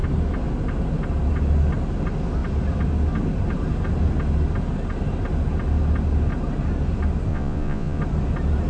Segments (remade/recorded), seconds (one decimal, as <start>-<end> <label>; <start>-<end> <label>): 0.0-7.3 recorded; 7.3-8.0 remade; 8.0-8.7 recorded